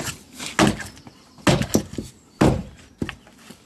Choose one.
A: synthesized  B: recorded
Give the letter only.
B